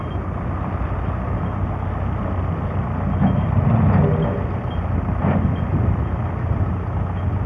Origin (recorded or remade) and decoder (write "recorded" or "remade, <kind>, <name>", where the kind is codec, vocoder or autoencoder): recorded